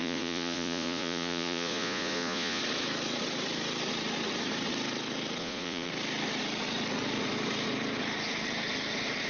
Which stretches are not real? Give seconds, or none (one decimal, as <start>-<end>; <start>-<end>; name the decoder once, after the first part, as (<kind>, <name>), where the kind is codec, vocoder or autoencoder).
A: 0.0-2.6 (vocoder, Vocos); 5.4-5.9